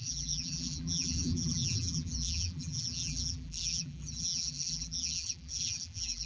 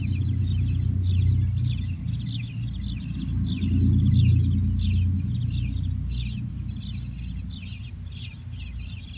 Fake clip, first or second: first